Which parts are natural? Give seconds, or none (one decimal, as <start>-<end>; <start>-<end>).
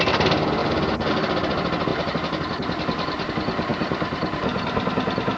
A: 0.0-0.6; 1.1-1.9; 3.3-3.7